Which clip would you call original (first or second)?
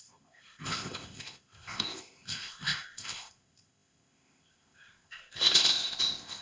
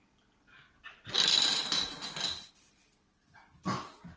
second